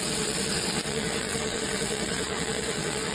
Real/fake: fake